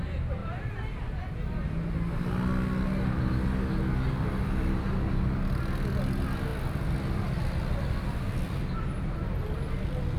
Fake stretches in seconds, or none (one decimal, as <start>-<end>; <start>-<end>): none